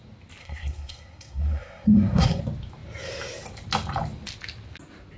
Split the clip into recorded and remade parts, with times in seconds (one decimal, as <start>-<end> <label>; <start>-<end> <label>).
0.0-0.4 recorded; 0.4-2.4 remade; 2.4-5.2 recorded